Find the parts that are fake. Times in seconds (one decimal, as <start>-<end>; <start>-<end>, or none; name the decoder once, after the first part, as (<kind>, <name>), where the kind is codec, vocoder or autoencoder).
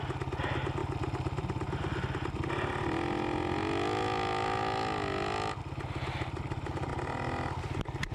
none